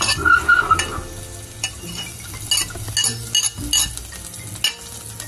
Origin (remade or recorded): recorded